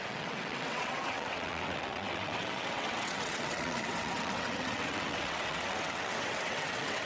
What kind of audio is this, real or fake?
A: fake